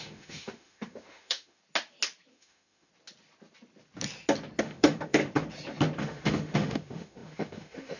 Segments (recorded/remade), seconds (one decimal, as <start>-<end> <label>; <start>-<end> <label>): 0.0-1.6 remade; 1.6-2.3 recorded; 2.3-2.9 remade; 2.9-4.6 recorded; 4.6-5.2 remade; 5.2-6.0 recorded; 6.0-8.0 remade